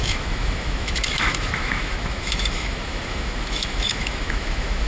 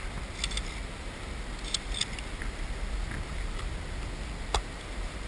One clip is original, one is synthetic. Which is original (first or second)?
second